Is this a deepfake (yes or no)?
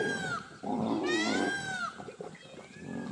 no